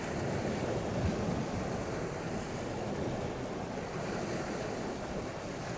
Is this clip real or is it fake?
real